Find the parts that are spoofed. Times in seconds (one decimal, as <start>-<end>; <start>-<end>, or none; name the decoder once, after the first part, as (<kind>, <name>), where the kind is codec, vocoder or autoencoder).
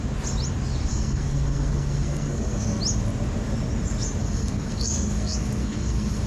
0.9-2.8 (codec, SNAC); 4.2-6.3